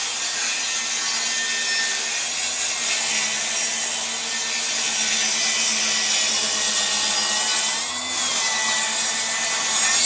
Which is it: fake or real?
real